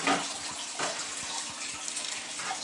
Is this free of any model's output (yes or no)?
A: yes